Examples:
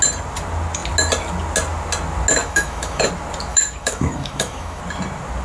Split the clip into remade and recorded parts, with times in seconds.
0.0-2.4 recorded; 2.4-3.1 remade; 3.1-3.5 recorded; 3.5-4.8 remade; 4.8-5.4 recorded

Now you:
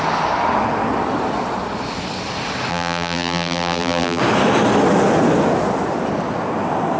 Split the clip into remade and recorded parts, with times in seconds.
0.0-2.7 recorded; 2.7-4.2 remade; 4.2-7.0 recorded

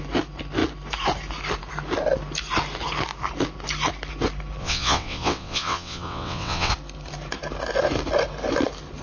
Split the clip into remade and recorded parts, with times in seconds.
0.0-4.6 recorded; 4.6-6.7 remade; 6.7-9.0 recorded

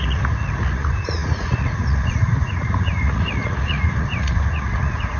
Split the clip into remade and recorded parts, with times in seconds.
0.0-5.2 remade

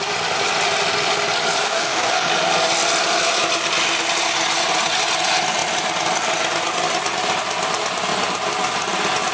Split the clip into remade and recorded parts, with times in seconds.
0.0-1.6 recorded; 1.6-2.3 remade; 2.3-9.3 recorded

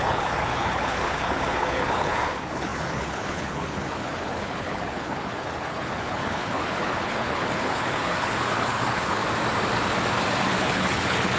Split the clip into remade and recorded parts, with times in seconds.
0.0-9.2 remade; 9.2-10.6 recorded; 10.6-11.4 remade

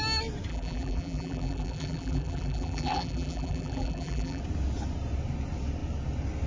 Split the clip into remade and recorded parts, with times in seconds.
0.0-0.5 recorded; 0.5-4.4 remade; 4.4-6.5 recorded

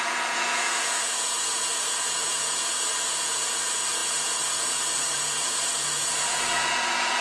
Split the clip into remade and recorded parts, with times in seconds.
0.0-7.2 remade